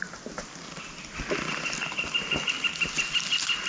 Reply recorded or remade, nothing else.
remade